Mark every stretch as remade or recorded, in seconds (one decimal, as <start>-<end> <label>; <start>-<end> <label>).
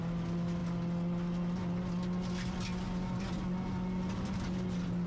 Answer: 0.0-5.1 recorded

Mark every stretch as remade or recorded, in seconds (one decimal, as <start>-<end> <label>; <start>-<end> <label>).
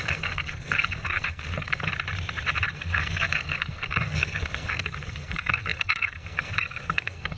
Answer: 0.0-1.9 remade; 1.9-2.7 recorded; 2.7-7.4 remade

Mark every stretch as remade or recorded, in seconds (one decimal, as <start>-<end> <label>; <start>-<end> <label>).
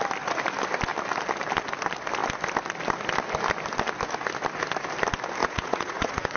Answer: 0.0-5.4 recorded; 5.4-6.4 remade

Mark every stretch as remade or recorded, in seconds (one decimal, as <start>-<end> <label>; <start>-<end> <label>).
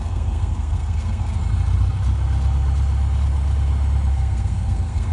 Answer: 0.0-1.4 remade; 1.4-4.1 recorded; 4.1-5.1 remade